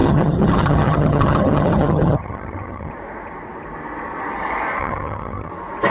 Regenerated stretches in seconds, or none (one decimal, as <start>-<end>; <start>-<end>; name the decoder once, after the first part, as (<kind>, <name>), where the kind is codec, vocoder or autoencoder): 0.0-2.9 (vocoder, HiFi-GAN); 4.8-5.5